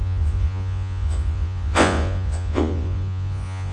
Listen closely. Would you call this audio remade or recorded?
remade